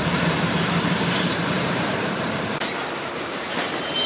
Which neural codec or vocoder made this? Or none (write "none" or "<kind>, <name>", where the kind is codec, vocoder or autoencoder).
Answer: vocoder, BigVGAN v2